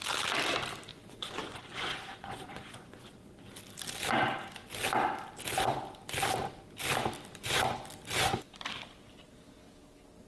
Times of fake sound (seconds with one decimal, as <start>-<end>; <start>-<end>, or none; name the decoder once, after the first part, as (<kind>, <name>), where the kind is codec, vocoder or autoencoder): 0.9-3.6 (vocoder, Vocos)